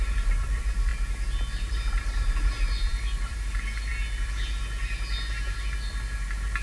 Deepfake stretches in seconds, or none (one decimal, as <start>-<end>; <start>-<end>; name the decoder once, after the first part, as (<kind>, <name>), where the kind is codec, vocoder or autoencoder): 0.0-0.9 (vocoder, BigVGAN v2); 1.5-3.9; 5.9-6.6